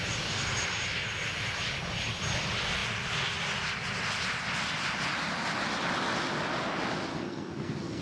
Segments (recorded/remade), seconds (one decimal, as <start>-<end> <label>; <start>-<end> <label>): 0.0-7.1 recorded; 7.1-8.0 remade